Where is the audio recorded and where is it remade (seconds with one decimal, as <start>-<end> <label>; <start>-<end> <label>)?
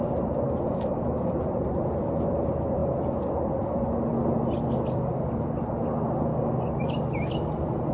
0.0-6.3 recorded; 6.3-6.8 remade; 6.8-7.9 recorded